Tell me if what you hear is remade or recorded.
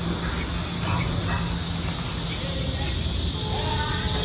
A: recorded